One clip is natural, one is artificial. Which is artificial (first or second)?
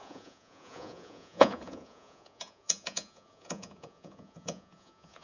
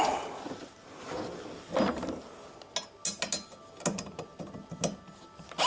first